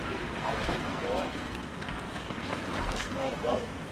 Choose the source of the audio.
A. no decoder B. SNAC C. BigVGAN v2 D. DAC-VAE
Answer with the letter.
B